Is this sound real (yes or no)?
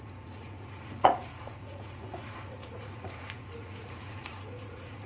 no